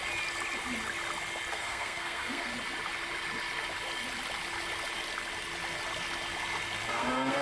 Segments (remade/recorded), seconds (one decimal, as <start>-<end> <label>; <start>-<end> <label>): 0.0-1.5 recorded; 1.5-2.5 remade; 2.5-6.9 recorded; 6.9-7.4 remade